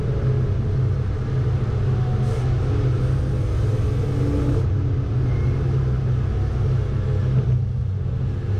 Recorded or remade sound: recorded